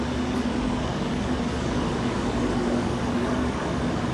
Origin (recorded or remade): remade